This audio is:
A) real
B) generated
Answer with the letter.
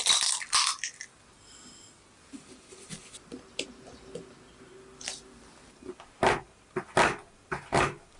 A